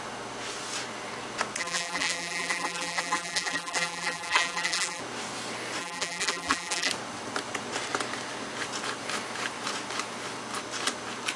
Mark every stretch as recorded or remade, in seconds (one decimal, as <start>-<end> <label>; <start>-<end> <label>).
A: 0.0-1.6 recorded; 1.6-5.0 remade; 5.0-5.8 recorded; 5.8-6.9 remade; 6.9-11.4 recorded

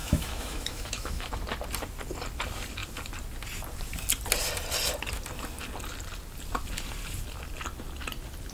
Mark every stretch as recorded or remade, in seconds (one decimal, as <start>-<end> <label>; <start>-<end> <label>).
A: 0.0-1.3 remade; 1.3-8.5 recorded

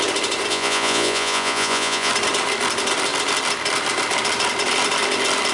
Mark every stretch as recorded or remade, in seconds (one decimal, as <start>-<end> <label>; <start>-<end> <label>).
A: 0.0-0.5 recorded; 0.5-2.1 remade; 2.1-5.5 recorded

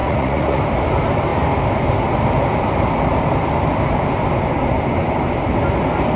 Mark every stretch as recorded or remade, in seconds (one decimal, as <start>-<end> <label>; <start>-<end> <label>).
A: 0.0-0.6 remade; 0.6-6.2 recorded